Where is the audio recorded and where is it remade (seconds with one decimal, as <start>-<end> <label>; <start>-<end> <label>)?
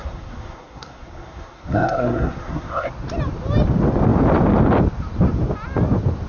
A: 0.0-2.9 remade; 2.9-6.3 recorded